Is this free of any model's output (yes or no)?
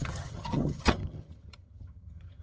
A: no